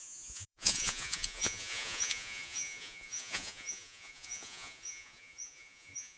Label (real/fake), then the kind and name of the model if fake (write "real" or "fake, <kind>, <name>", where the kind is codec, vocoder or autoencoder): fake, vocoder, Vocos